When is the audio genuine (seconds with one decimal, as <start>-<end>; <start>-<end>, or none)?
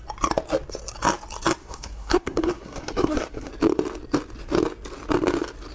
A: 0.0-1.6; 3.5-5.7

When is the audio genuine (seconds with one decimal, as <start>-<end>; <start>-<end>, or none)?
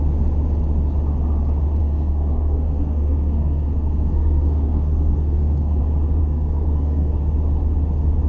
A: 0.0-1.8; 5.8-6.2; 7.2-8.3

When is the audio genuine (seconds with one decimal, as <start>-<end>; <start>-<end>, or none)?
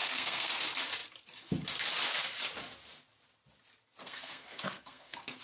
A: 0.6-4.0